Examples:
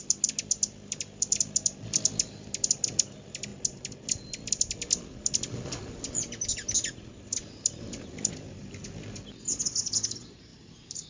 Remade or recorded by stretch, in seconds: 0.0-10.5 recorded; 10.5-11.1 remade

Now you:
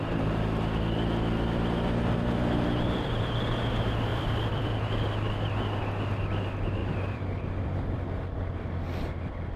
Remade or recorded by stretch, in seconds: 0.0-4.1 recorded; 4.1-4.7 remade; 4.7-6.8 recorded; 6.8-7.6 remade; 7.6-9.6 recorded